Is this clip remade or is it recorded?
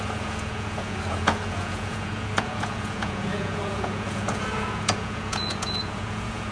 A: remade